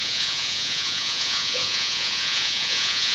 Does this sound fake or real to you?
fake